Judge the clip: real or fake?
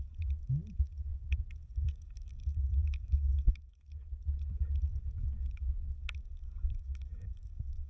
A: fake